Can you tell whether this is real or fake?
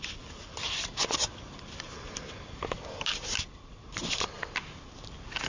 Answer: real